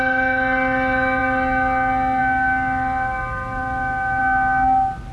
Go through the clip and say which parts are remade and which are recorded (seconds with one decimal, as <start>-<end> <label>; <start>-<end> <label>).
0.0-5.1 recorded